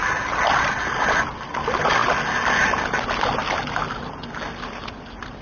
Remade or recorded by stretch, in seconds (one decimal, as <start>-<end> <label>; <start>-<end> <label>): 0.0-5.4 recorded